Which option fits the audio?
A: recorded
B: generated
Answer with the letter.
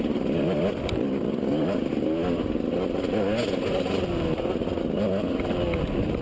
A